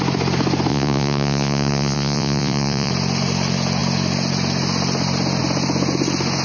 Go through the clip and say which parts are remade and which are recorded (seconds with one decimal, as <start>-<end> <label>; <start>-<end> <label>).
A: 0.0-0.7 recorded; 0.7-2.9 remade; 2.9-6.4 recorded